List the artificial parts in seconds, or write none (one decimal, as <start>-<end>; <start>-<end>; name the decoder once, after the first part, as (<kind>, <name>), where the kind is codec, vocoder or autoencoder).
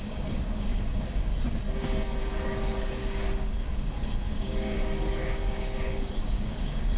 0.0-1.3 (codec, DAC); 2.2-7.0